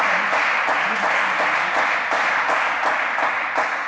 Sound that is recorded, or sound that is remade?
recorded